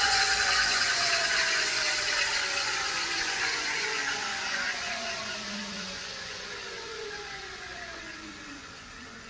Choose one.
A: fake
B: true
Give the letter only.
A